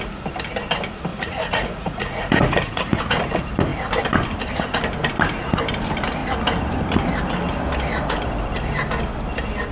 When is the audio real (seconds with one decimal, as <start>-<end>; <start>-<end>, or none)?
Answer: 0.0-1.1; 3.0-9.7